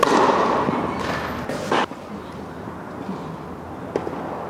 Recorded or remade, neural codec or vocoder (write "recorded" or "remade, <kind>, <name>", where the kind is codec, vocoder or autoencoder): recorded